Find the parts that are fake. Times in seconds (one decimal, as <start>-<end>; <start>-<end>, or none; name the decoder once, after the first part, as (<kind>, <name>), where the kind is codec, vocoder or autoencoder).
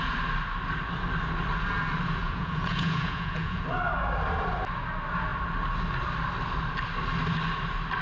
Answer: 2.2-3.6 (vocoder, Vocos)